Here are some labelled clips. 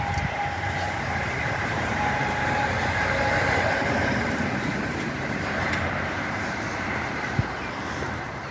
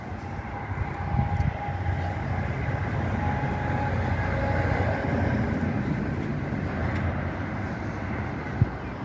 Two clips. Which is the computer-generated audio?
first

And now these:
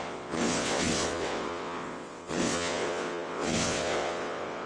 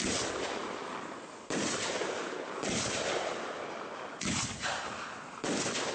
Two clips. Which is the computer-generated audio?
first